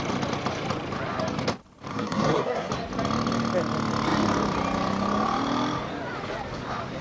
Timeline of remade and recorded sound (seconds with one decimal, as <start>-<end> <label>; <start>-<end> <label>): 0.0-1.9 recorded; 1.9-2.7 remade; 2.7-7.0 recorded